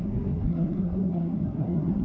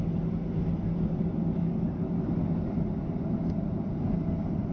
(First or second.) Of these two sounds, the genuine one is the second